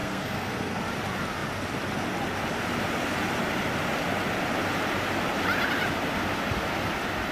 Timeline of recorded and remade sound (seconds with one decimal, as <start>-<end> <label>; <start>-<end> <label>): 0.0-0.8 remade; 0.8-7.3 recorded